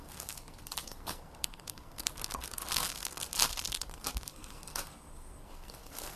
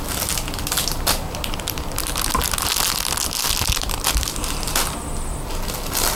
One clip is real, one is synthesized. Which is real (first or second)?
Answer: second